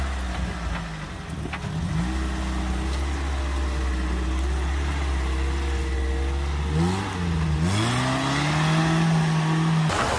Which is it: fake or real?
real